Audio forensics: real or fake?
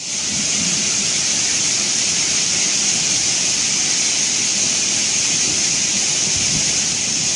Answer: real